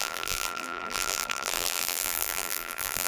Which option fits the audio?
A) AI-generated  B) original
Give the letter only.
A